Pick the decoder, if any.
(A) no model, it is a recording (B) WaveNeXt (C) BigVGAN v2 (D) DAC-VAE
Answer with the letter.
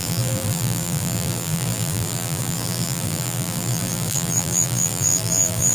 C